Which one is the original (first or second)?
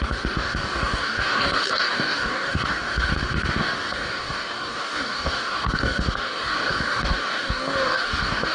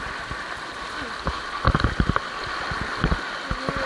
second